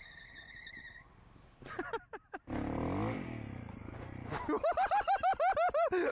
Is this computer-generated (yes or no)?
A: no